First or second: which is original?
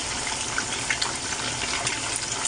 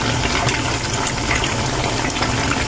second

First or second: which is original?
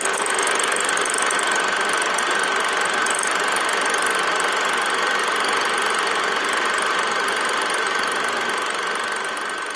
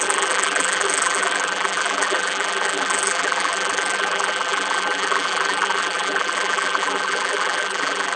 first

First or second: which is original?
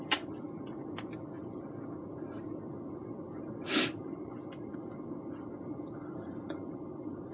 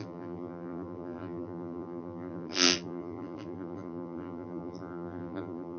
first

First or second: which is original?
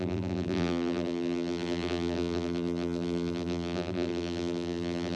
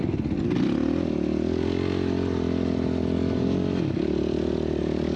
second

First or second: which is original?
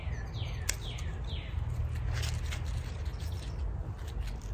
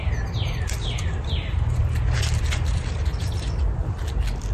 first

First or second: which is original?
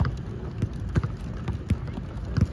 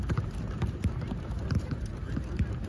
first